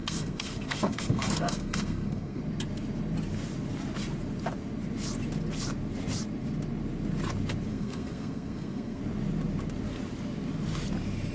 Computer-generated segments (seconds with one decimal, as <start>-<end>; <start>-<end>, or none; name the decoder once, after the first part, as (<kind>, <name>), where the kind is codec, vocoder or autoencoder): 0.0-2.4 (codec, SNAC); 7.7-9.0